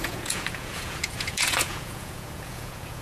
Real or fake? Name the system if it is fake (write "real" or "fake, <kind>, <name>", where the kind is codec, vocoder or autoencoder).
fake, vocoder, Vocos